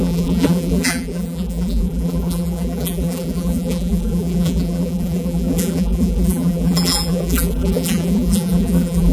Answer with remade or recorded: remade